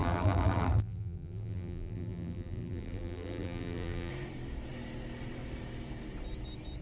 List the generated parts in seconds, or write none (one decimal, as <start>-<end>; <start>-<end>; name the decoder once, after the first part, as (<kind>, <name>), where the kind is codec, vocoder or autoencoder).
0.0-4.1 (vocoder, BigVGAN v2)